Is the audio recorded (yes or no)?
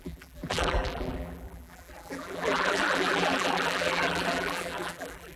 no